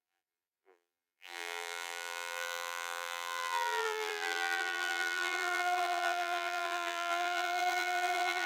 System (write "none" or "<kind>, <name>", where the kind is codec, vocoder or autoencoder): vocoder, BigVGAN v2